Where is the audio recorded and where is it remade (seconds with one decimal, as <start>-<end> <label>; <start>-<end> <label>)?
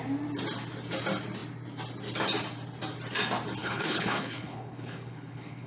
0.0-3.6 recorded; 3.6-5.7 remade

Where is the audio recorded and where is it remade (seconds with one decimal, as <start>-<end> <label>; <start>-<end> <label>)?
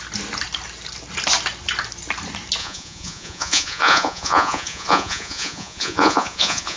0.0-2.6 recorded; 2.6-6.8 remade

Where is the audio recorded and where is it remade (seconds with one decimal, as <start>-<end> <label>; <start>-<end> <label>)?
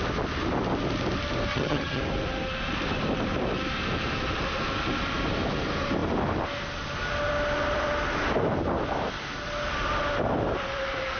0.0-1.5 recorded; 1.5-2.0 remade; 2.0-11.2 recorded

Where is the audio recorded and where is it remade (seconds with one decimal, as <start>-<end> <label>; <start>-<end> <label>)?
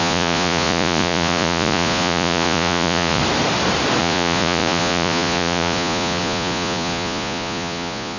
0.0-3.2 remade; 3.2-4.0 recorded; 4.0-8.2 remade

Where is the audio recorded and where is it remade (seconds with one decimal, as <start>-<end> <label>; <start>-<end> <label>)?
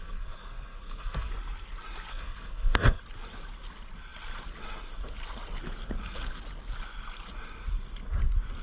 0.0-1.3 remade; 1.3-2.1 recorded; 2.1-3.0 remade; 3.0-8.6 recorded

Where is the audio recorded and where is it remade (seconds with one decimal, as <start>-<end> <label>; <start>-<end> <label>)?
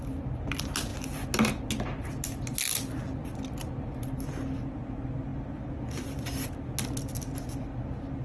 0.0-8.2 recorded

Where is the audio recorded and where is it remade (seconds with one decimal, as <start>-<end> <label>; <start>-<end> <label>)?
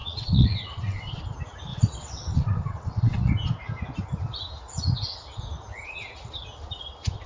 0.0-1.2 remade; 1.2-1.7 recorded; 1.7-3.3 remade; 3.3-7.3 recorded